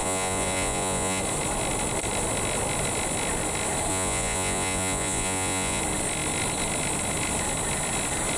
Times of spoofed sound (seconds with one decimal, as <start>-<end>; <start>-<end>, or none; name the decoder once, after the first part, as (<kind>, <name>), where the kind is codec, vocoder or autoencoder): 0.0-1.2 (vocoder, Vocos); 3.9-5.8

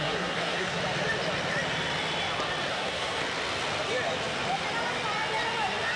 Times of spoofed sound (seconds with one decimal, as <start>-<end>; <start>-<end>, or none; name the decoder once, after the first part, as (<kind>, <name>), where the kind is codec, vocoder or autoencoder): 0.0-0.8 (codec, SNAC); 2.7-3.2

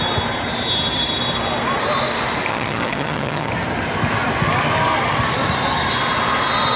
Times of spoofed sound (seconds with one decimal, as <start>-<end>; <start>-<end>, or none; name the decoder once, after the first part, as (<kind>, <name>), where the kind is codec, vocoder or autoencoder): 2.5-3.5 (vocoder, HiFi-GAN)

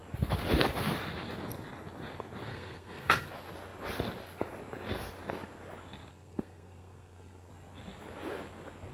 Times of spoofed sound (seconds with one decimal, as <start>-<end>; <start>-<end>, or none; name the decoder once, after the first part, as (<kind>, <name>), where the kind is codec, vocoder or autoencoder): 2.5-3.3 (codec, SNAC); 6.1-7.5

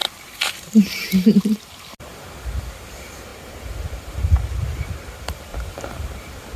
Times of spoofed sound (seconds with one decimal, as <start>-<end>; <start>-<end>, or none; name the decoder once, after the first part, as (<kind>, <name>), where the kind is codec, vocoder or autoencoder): 0.0-1.4 (vocoder, BigVGAN v2); 3.3-4.4; 5.5-6.6